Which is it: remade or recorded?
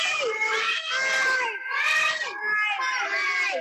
recorded